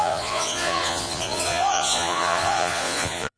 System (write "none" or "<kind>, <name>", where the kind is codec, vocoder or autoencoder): vocoder, Vocos